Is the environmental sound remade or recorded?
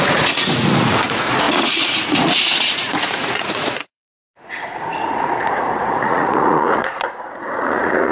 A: remade